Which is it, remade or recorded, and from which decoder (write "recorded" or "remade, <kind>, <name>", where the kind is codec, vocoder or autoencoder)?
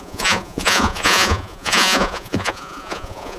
remade, vocoder, Vocos